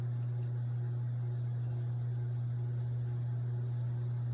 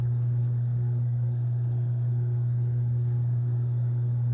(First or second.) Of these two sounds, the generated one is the second